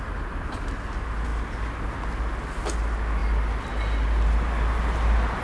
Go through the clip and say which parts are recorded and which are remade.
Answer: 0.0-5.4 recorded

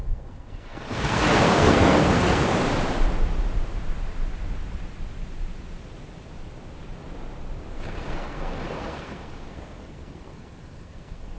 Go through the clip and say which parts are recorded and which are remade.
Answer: 0.0-2.5 remade; 2.5-7.7 recorded; 7.7-11.4 remade

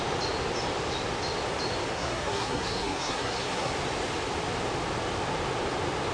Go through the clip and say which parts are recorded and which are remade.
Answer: 0.0-1.9 recorded; 1.9-3.7 remade; 3.7-6.1 recorded

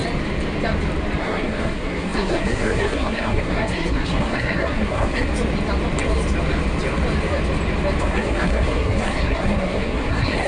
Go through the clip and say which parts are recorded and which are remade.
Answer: 0.0-1.2 recorded; 1.2-5.3 remade; 5.3-8.0 recorded; 8.0-10.5 remade

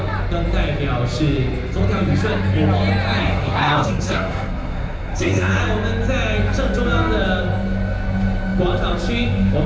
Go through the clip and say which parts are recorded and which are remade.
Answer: 0.0-3.2 recorded; 3.2-5.6 remade; 5.6-9.7 recorded